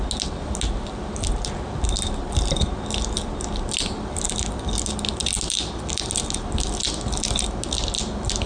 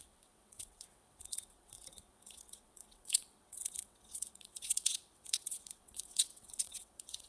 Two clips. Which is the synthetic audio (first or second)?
second